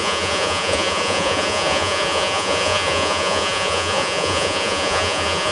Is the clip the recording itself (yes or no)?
no